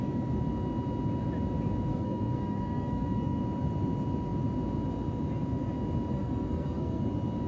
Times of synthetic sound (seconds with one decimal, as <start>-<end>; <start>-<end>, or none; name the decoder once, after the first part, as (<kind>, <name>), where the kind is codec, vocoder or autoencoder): 1.9-3.4 (codec, SNAC); 6.1-7.0